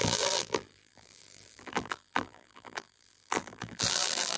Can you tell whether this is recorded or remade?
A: remade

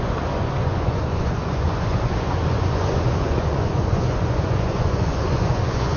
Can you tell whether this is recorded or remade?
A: remade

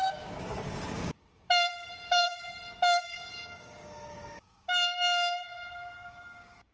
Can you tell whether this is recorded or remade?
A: remade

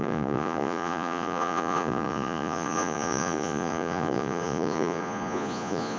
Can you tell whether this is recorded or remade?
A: remade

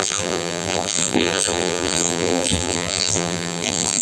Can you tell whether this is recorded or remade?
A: remade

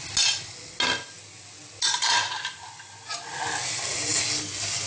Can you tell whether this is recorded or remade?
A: recorded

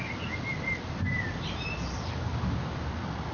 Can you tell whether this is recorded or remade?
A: recorded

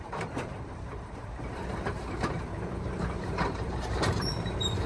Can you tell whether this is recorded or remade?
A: remade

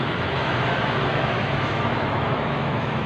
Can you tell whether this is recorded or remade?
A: remade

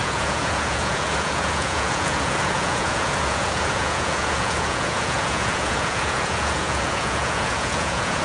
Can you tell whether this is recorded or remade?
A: remade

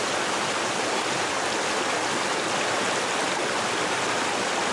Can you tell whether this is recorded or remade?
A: recorded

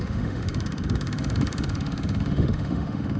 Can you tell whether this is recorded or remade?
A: remade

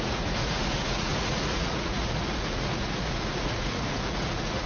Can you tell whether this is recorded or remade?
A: remade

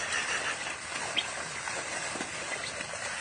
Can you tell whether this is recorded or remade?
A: recorded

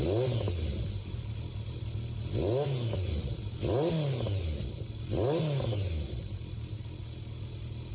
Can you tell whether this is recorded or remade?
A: recorded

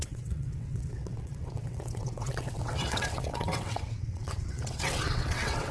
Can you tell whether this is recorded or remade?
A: remade